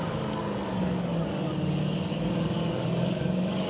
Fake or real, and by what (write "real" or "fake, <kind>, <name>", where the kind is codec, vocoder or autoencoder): fake, codec, DAC